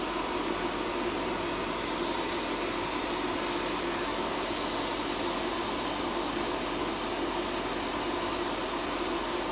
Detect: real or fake real